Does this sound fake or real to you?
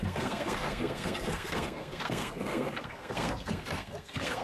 fake